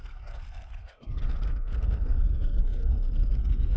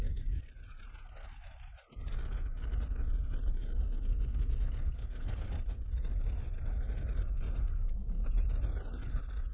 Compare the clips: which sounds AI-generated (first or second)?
first